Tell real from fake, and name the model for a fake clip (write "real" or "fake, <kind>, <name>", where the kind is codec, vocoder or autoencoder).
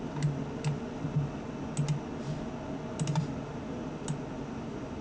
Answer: real